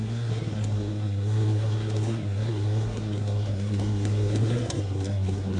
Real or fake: fake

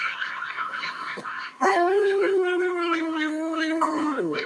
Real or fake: fake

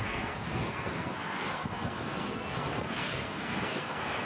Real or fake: fake